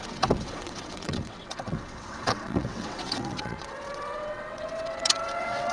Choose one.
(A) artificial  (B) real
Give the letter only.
A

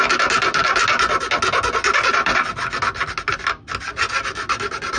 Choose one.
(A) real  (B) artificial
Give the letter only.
A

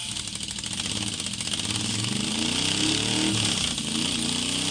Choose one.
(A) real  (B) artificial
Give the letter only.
A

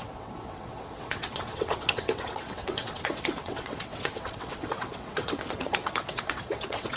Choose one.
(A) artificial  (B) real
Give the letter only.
A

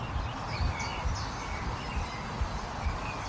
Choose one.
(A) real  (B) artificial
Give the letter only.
A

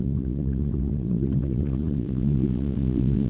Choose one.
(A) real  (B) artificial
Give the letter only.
B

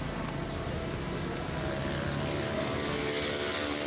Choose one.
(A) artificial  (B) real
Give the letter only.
B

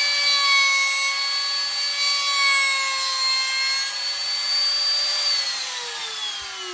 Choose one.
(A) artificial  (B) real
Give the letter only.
B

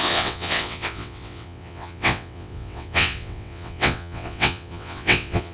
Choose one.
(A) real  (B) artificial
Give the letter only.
B